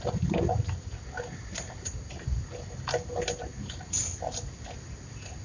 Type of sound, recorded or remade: recorded